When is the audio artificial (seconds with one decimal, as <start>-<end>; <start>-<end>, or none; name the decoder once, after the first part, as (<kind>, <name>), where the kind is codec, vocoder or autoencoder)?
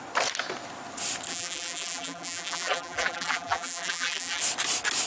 1.3-4.4 (vocoder, BigVGAN v2)